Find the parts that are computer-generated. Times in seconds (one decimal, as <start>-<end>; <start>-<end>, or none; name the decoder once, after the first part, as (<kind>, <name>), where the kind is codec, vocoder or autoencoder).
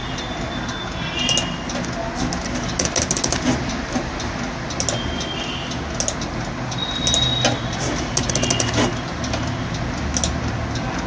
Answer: none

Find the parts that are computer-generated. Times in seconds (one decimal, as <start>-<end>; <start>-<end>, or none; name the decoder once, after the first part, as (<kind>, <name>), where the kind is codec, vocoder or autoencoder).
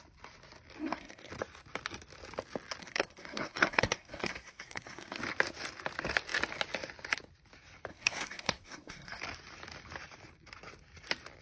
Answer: 0.8-1.3 (codec, SNAC); 2.8-5.2; 7.9-9.2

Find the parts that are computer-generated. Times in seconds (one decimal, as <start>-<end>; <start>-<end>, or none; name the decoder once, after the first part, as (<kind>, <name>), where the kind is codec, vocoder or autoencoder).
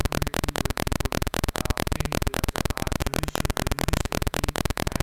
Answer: 0.0-3.0 (autoencoder, DAC-VAE); 4.0-5.0